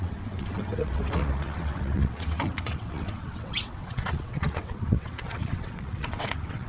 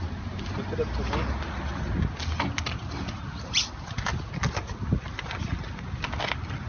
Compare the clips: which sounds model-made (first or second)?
first